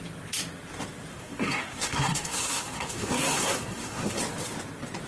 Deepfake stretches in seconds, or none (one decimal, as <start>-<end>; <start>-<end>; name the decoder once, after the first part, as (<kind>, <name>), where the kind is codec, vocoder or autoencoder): 1.1-4.2 (codec, SNAC)